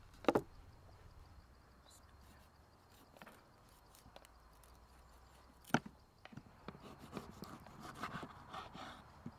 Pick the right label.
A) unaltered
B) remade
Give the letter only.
A